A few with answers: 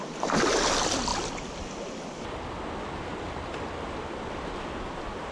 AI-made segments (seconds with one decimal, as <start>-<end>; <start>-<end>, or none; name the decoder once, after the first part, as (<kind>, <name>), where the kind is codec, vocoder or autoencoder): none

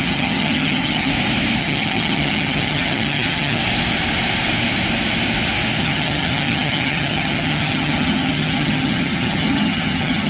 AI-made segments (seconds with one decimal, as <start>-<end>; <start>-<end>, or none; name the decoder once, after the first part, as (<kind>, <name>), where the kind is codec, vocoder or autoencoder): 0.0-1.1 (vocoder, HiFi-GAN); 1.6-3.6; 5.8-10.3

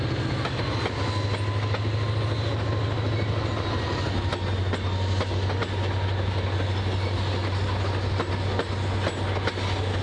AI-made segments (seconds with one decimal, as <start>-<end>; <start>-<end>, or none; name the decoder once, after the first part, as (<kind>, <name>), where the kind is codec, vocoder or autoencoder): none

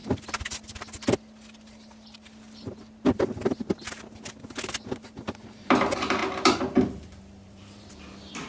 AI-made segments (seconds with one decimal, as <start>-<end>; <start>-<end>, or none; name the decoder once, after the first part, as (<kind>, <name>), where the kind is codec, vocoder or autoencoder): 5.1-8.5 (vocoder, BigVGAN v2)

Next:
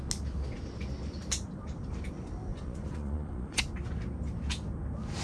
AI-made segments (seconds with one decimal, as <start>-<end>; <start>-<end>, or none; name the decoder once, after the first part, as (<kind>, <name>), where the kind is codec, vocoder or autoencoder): 2.5-3.6 (vocoder, Vocos)

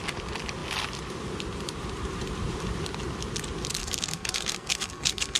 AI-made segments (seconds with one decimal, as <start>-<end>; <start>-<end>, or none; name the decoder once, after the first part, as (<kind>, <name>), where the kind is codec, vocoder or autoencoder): 3.8-5.4 (codec, SNAC)